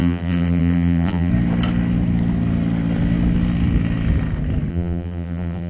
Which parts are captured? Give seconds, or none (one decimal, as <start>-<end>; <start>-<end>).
1.3-4.7